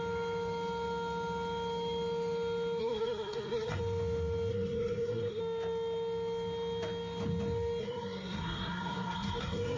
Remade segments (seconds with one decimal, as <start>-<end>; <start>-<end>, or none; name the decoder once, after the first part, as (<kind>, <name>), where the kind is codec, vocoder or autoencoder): 2.8-3.8 (codec, SNAC); 4.5-5.4; 7.8-9.8